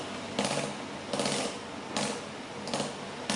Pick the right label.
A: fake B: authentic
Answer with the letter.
B